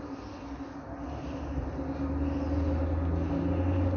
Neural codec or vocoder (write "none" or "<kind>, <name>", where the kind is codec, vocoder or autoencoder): none